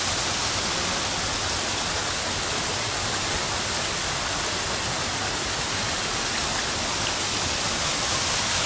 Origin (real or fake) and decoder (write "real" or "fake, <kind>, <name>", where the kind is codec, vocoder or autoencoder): real